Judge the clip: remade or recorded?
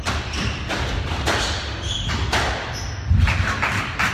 recorded